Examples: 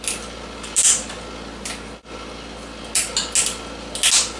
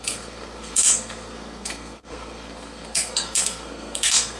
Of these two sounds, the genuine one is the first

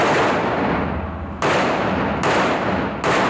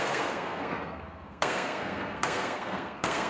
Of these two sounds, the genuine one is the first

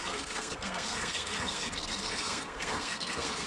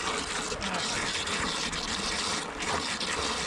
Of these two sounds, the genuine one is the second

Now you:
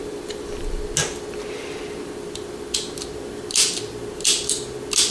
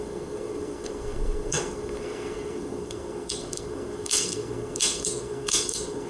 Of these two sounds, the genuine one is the first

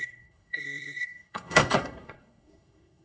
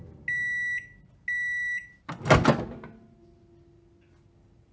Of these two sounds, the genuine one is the second